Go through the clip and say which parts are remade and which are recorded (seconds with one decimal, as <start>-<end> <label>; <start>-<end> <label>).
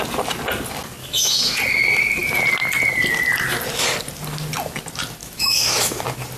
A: 0.0-1.0 recorded; 1.0-1.6 remade; 1.6-5.2 recorded; 5.2-6.0 remade; 6.0-6.4 recorded